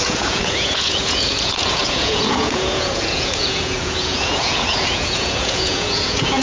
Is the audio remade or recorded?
remade